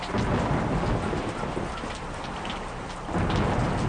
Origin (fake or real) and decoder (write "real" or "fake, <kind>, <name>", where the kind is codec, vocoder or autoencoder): real